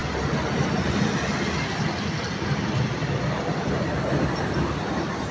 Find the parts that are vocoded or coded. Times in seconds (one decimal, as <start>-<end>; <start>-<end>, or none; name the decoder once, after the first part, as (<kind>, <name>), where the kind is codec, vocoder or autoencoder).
2.5-3.0 (vocoder, BigVGAN v2); 4.8-5.3